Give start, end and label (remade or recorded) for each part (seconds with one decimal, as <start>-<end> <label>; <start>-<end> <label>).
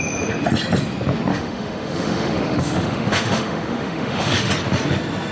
0.0-1.3 recorded; 1.3-4.5 remade; 4.5-5.3 recorded